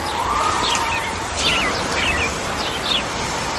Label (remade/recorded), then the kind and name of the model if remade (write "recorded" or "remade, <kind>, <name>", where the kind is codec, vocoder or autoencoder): remade, vocoder, BigVGAN v2